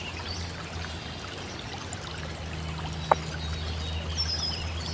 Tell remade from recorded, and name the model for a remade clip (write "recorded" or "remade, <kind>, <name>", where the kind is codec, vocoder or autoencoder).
recorded